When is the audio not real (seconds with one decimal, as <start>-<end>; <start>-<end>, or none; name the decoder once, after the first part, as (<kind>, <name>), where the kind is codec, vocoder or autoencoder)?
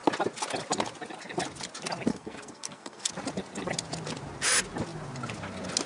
2.1-3.1 (codec, SNAC)